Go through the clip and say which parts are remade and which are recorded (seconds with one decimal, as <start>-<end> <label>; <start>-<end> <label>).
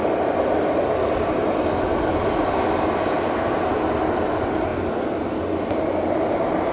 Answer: 0.0-6.7 recorded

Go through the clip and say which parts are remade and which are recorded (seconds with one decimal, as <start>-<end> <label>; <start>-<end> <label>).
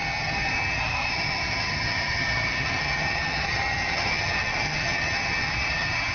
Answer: 0.0-6.1 remade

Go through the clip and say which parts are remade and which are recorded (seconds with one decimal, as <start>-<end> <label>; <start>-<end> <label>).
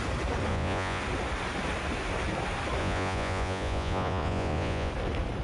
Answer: 0.0-0.5 recorded; 0.5-1.0 remade; 1.0-2.8 recorded; 2.8-4.9 remade; 4.9-5.4 recorded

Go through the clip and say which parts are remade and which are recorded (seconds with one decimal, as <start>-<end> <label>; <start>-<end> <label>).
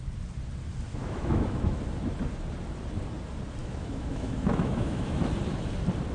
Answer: 0.0-0.9 recorded; 0.9-1.8 remade; 1.8-3.6 recorded; 3.6-5.3 remade; 5.3-6.1 recorded